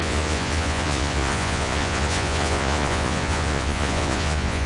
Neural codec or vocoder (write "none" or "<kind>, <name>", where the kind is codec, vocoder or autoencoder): vocoder, Vocos